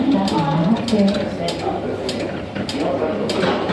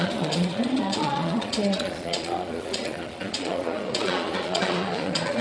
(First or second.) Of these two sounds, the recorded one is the first